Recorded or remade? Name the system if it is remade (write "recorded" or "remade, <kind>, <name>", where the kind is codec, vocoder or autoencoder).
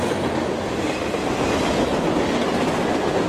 recorded